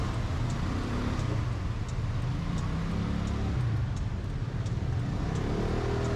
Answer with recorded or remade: recorded